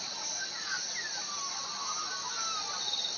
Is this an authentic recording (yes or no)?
yes